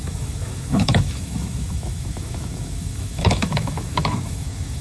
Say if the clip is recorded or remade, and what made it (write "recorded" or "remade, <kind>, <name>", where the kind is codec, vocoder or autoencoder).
remade, autoencoder, DAC-VAE